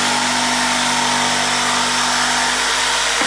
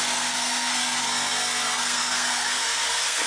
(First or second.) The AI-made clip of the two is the second